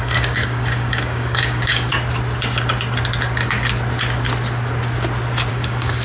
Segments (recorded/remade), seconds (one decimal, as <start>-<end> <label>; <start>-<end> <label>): 0.0-1.9 remade; 1.9-5.5 recorded; 5.5-6.0 remade